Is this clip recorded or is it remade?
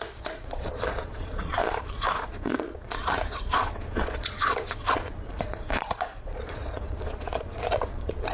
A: remade